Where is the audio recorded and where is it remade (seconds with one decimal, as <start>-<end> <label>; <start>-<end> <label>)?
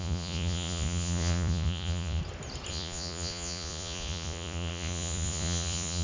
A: 0.0-2.2 remade; 2.2-2.7 recorded; 2.7-6.0 remade